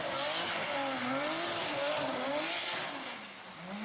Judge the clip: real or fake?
real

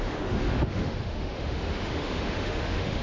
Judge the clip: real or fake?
fake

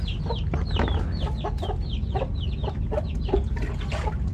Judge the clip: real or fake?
real